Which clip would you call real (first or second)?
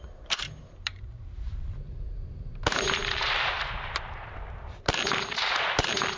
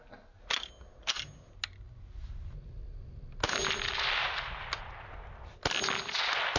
second